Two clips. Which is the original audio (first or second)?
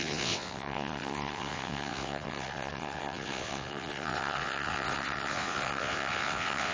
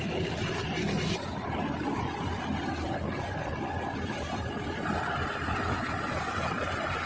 second